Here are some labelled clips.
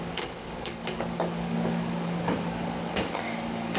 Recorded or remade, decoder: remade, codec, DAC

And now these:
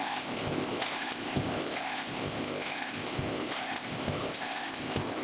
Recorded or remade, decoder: remade, codec, ZipCodec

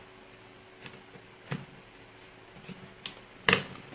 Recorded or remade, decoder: recorded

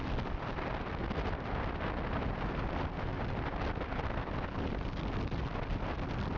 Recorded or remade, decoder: recorded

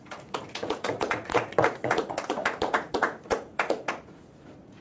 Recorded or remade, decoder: remade, vocoder, Vocos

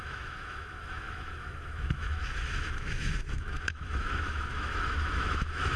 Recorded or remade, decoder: remade, autoencoder, DAC-VAE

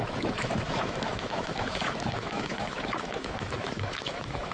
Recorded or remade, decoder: remade, autoencoder, DAC-VAE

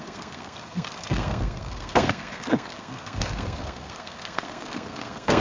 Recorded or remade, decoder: remade, codec, SNAC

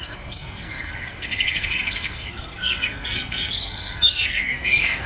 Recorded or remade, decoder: remade, codec, SNAC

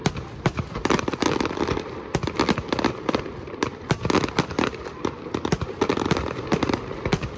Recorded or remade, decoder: remade, vocoder, BigVGAN v2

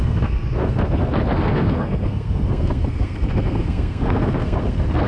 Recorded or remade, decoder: remade, codec, SNAC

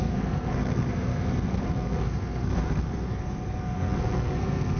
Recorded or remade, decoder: remade, codec, SNAC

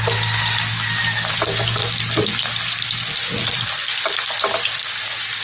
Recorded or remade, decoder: recorded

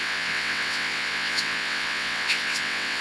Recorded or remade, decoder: remade, vocoder, WaveNeXt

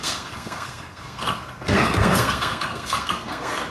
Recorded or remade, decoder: remade, codec, SNAC